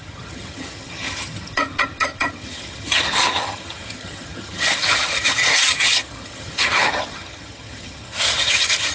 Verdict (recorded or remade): remade